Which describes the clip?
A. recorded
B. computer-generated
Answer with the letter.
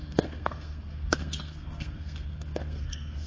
B